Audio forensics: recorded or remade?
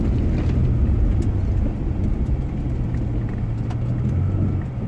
recorded